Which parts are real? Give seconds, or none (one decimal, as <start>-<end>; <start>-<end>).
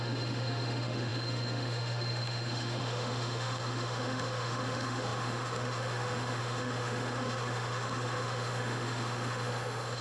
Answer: none